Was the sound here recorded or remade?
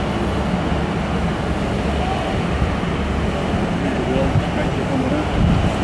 recorded